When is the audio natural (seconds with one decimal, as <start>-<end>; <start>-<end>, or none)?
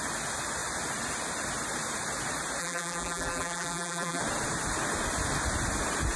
0.0-2.6; 4.2-6.2